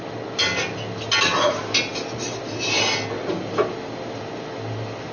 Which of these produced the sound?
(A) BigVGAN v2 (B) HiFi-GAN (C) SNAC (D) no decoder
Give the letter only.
D